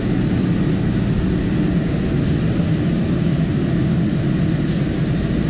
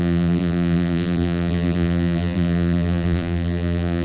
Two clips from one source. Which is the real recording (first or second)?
first